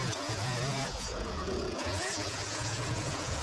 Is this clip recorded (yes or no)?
no